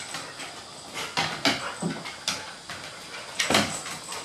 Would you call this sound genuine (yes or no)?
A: yes